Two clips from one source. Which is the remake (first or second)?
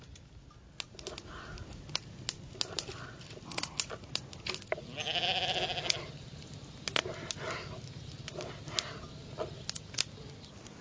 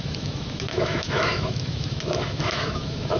second